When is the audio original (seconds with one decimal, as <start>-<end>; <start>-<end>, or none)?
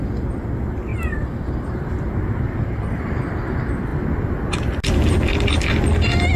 0.0-0.9; 1.5-2.3; 3.1-6.4